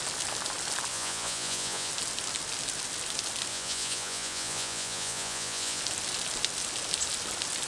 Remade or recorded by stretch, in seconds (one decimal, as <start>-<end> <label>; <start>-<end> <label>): 0.0-0.9 recorded; 0.9-1.9 remade; 1.9-3.5 recorded; 3.5-5.8 remade; 5.8-7.7 recorded